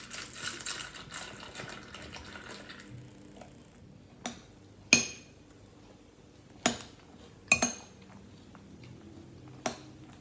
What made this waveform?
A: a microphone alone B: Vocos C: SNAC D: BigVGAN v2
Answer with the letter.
A